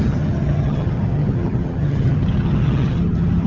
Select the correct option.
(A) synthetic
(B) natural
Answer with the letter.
A